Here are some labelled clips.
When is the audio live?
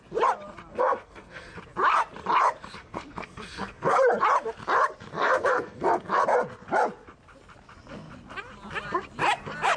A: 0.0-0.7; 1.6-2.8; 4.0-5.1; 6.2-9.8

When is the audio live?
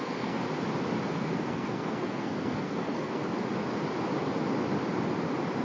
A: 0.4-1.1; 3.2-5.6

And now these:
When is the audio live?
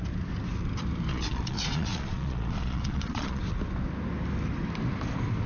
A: 0.0-1.1; 3.4-5.5